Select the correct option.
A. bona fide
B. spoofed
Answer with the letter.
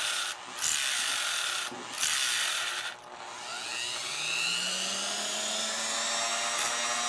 A